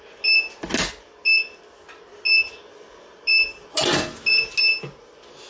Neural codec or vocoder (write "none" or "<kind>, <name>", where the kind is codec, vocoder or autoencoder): none